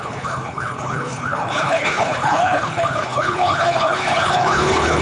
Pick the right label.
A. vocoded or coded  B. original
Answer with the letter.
A